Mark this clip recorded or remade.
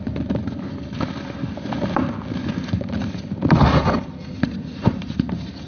recorded